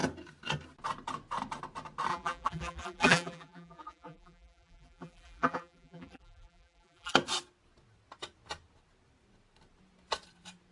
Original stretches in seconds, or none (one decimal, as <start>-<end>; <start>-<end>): 0.0-2.1; 7.1-10.7